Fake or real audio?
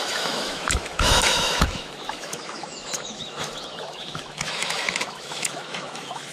fake